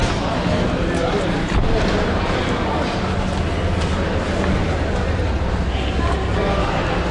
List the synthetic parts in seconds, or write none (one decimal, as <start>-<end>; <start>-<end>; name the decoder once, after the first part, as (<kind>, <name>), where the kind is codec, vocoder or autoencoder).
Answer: none